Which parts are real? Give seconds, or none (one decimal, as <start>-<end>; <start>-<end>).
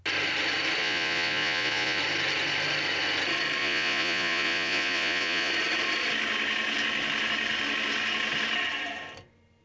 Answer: 0.0-0.8; 2.0-3.6; 5.5-9.6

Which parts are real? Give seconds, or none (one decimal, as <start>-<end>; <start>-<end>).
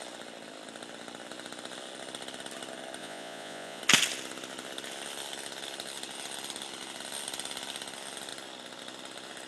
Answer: 0.0-3.0; 3.8-9.5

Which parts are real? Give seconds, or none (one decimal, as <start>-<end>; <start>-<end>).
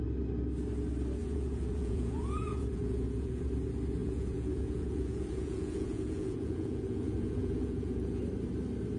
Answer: 0.0-1.2; 3.4-4.0; 8.2-9.0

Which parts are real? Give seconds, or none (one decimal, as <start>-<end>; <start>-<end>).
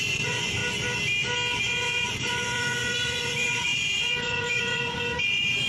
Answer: 0.6-1.6